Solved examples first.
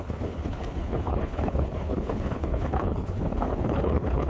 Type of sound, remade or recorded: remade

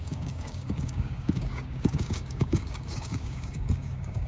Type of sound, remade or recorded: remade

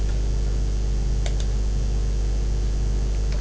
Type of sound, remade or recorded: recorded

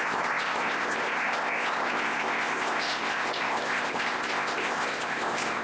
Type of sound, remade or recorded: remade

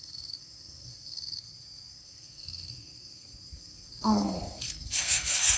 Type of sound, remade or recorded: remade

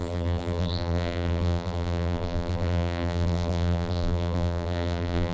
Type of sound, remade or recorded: remade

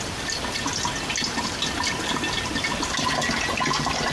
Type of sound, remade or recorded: recorded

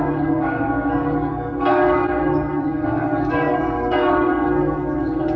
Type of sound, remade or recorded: remade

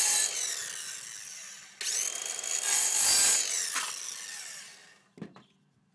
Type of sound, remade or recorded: recorded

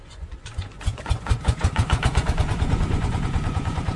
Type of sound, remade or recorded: remade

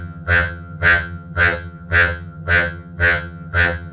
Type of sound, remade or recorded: remade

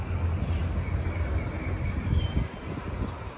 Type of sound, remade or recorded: recorded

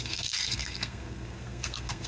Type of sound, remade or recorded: remade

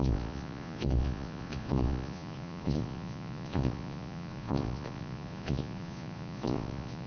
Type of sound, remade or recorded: remade